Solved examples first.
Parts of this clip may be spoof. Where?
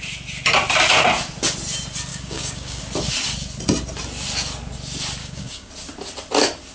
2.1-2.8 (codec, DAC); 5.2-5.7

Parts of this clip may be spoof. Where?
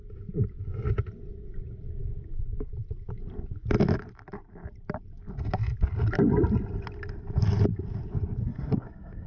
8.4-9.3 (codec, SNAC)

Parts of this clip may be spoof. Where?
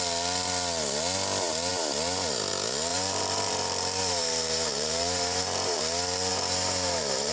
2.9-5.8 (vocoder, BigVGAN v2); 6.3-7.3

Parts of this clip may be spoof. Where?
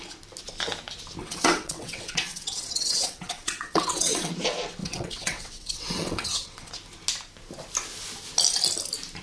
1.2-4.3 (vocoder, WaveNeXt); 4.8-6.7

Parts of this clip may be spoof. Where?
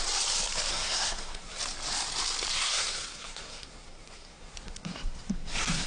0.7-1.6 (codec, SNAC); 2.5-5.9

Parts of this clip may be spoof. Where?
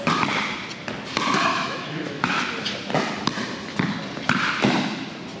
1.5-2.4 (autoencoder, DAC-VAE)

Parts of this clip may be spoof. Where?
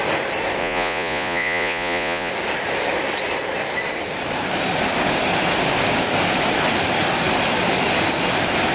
0.6-2.3 (vocoder, Vocos)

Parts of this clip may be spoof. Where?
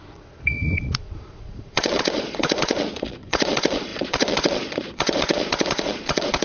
0.0-6.4 (vocoder, Vocos)